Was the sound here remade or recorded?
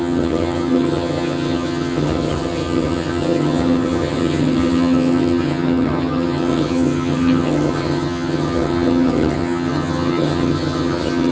remade